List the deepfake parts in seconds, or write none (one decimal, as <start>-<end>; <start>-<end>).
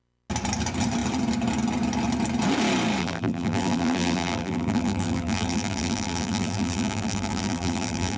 3.0-8.2